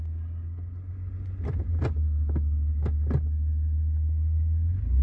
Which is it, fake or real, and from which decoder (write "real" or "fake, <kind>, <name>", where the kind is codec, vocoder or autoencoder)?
real